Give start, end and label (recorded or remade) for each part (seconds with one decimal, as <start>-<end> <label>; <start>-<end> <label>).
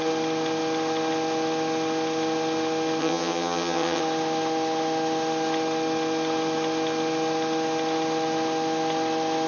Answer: 0.0-3.0 recorded; 3.0-4.0 remade; 4.0-9.5 recorded